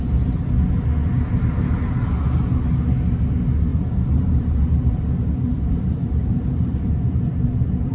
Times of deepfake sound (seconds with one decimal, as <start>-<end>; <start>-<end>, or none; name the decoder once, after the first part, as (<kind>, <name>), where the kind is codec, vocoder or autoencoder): 3.7-7.2 (vocoder, BigVGAN v2)